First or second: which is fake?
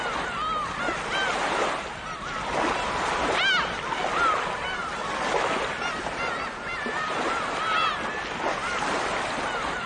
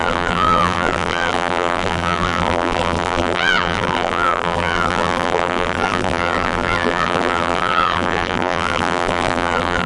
second